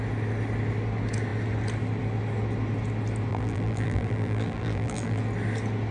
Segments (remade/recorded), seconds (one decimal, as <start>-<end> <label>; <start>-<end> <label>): 0.0-3.3 recorded; 3.3-5.2 remade; 5.2-5.9 recorded